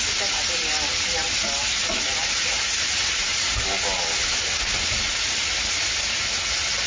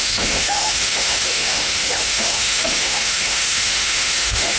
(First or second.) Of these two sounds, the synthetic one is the second